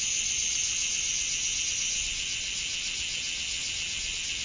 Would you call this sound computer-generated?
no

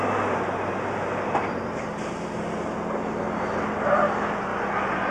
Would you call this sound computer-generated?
no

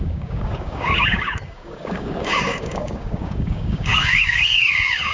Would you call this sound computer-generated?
yes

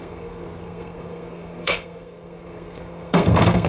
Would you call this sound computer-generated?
yes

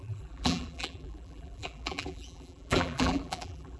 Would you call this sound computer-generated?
yes